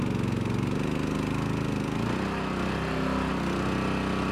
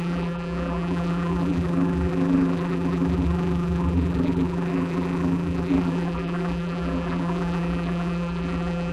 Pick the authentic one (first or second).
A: first